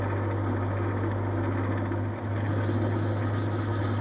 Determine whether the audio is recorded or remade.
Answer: recorded